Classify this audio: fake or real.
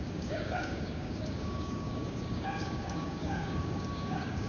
fake